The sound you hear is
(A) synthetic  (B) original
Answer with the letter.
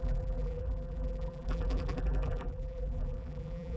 A